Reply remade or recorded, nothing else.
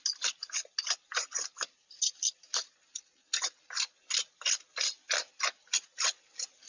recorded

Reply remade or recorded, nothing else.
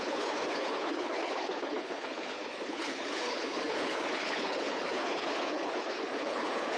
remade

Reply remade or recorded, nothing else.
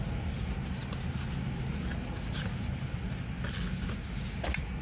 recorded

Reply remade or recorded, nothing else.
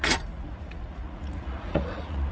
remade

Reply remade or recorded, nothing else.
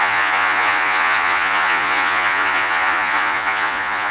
remade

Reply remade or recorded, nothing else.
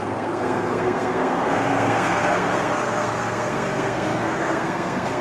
remade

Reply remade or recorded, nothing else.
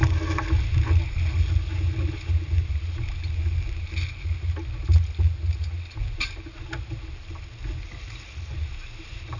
recorded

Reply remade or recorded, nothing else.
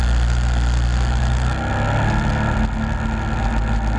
recorded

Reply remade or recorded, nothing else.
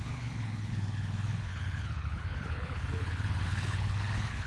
remade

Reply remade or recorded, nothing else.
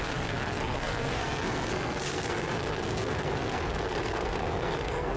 remade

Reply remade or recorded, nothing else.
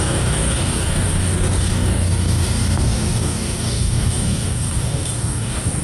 remade